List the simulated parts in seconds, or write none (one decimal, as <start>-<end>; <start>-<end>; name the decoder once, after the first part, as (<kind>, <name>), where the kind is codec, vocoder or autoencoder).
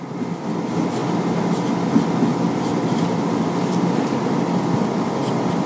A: 2.7-4.3 (vocoder, BigVGAN v2)